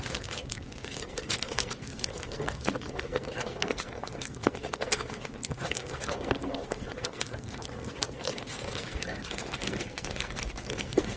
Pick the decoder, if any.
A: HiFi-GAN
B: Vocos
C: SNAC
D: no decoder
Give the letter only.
C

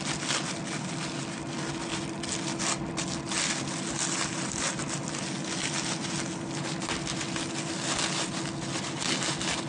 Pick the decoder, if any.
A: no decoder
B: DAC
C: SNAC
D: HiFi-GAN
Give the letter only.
A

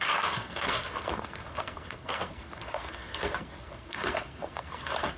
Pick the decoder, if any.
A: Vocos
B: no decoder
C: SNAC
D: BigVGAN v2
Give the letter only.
C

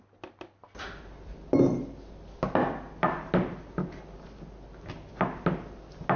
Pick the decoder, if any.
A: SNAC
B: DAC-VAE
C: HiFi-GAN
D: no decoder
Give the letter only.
D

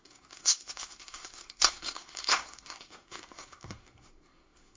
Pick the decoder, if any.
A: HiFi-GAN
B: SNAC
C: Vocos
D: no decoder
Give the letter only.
B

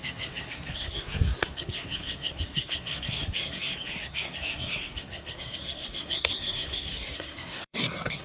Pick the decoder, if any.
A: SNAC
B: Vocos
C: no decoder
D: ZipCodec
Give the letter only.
A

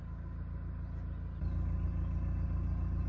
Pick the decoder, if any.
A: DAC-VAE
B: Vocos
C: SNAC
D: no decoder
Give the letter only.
D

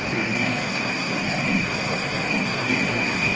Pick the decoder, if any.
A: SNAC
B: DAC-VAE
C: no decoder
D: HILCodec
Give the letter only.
A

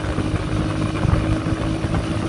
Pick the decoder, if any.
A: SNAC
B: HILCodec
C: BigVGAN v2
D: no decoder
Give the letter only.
D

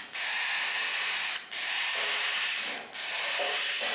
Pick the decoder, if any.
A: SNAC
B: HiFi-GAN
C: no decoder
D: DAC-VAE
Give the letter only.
C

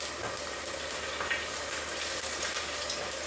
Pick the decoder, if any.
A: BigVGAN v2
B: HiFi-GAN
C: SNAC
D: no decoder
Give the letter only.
D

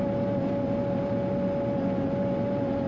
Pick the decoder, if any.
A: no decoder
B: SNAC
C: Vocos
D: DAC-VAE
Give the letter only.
A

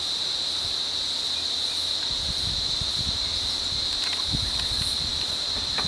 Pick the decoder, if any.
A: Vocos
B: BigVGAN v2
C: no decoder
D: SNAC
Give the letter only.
C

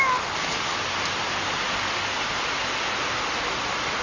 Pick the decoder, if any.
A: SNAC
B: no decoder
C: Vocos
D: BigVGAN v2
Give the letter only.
B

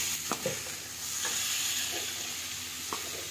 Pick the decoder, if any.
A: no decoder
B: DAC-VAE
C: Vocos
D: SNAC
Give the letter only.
A